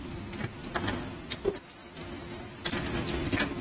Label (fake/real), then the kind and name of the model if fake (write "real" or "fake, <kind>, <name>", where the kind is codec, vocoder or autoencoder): real